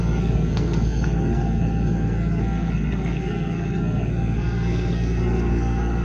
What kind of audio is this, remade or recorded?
remade